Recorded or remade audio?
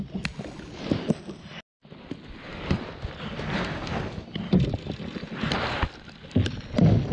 recorded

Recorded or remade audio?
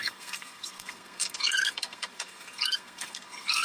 remade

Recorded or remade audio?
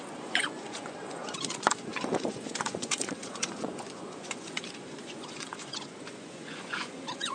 remade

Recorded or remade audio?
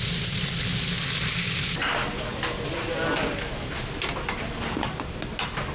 recorded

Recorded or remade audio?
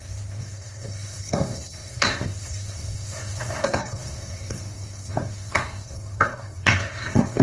remade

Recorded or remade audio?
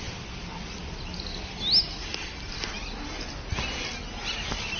recorded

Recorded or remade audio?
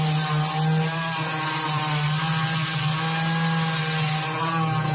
recorded